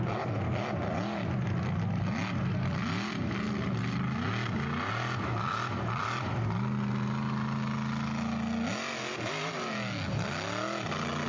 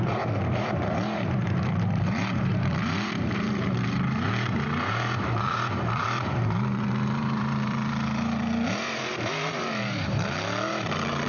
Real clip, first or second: first